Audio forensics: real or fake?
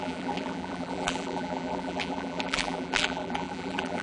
fake